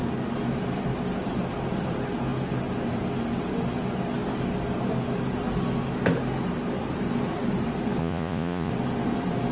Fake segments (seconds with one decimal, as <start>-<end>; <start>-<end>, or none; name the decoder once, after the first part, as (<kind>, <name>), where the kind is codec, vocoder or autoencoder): 8.0-8.7 (vocoder, Vocos)